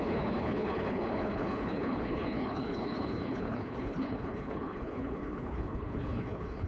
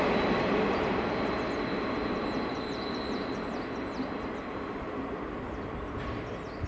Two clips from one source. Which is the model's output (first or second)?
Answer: first